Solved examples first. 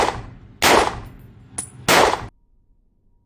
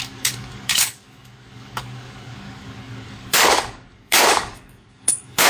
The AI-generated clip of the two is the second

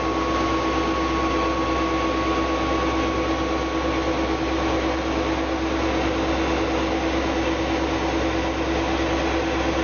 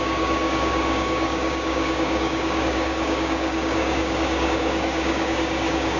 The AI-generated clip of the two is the second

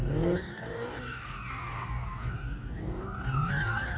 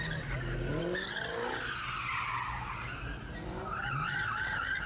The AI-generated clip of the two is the first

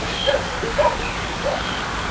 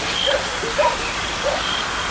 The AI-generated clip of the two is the first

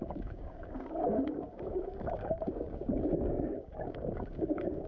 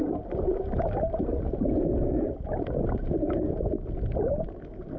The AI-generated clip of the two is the first